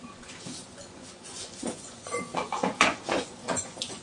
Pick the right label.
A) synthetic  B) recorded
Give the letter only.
A